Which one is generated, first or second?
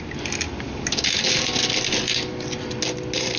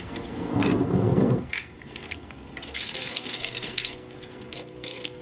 second